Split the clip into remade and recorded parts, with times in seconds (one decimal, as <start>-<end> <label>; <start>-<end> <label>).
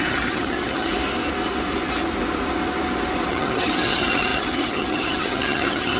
0.0-0.9 remade; 0.9-3.3 recorded; 3.3-6.0 remade